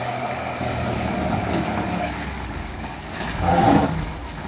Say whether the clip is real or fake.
fake